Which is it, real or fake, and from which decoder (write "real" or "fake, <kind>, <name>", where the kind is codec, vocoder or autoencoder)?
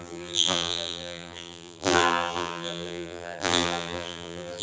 fake, vocoder, BigVGAN v2